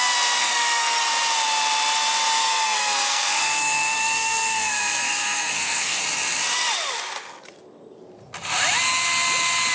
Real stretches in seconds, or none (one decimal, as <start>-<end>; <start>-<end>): 0.0-0.4; 1.0-2.4; 6.0-9.7